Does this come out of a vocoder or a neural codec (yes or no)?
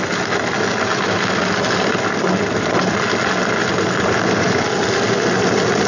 no